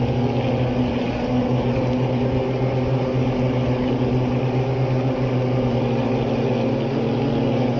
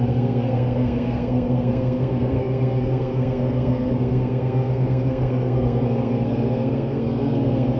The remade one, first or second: second